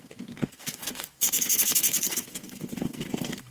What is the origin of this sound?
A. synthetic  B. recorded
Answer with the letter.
A